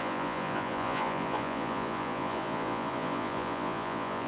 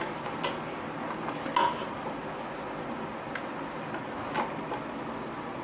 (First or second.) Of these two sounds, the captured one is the second